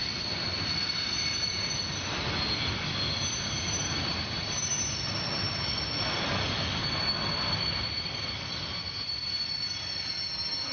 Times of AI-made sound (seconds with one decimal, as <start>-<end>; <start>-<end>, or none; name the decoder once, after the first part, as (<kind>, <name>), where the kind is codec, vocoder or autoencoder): none